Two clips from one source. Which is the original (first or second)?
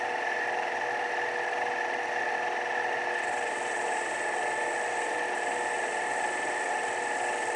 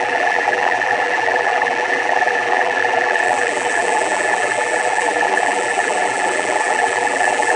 first